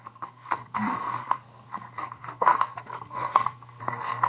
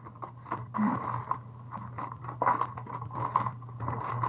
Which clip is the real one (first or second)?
second